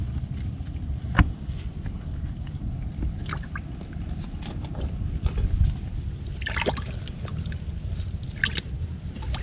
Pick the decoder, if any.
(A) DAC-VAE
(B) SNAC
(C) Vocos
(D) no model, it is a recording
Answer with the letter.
D